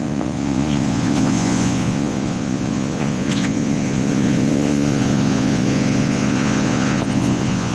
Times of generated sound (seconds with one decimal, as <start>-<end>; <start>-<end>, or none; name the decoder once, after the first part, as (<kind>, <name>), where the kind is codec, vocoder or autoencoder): 0.0-7.7 (vocoder, Vocos)